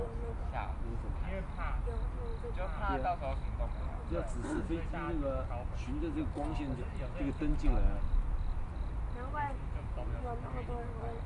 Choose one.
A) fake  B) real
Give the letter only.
B